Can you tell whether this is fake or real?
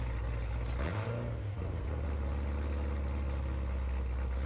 real